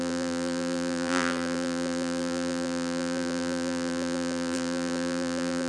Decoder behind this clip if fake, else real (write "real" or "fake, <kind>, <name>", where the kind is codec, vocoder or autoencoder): fake, vocoder, BigVGAN v2